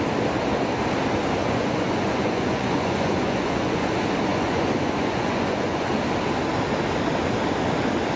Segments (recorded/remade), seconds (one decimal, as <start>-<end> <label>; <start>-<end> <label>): 0.0-1.4 recorded; 1.4-3.9 remade; 3.9-4.3 recorded; 4.3-5.9 remade; 5.9-8.2 recorded

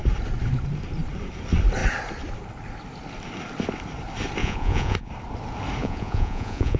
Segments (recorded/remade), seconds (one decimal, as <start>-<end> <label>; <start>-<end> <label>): 0.0-4.4 recorded; 4.4-5.1 remade; 5.1-5.8 recorded; 5.8-6.8 remade

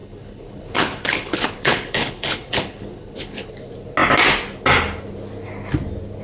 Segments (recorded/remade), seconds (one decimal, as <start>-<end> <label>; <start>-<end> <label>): 0.0-3.5 remade; 3.5-6.2 recorded

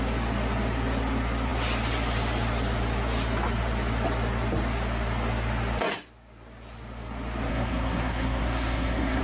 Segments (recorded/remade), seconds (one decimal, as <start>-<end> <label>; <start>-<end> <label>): 0.0-7.5 recorded; 7.5-9.2 remade